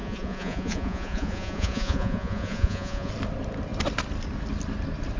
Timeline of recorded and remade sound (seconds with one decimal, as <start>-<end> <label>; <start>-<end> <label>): 0.0-3.1 remade; 3.1-5.2 recorded